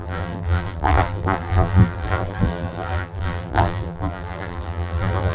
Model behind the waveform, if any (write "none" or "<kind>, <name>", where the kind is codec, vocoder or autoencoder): vocoder, BigVGAN v2